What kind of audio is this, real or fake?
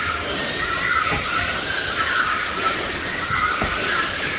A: real